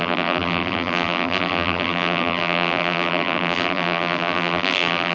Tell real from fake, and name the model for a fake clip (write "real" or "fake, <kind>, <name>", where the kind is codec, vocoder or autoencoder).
fake, vocoder, BigVGAN v2